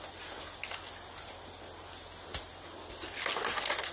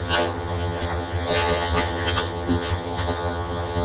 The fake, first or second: second